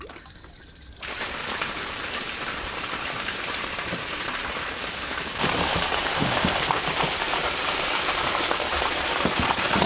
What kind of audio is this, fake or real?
fake